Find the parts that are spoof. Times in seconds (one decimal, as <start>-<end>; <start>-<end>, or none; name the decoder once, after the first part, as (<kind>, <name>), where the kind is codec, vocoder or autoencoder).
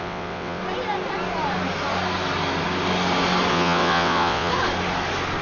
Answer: 0.0-0.6 (vocoder, WaveNeXt); 3.5-4.5